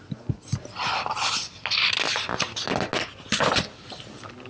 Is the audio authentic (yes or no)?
yes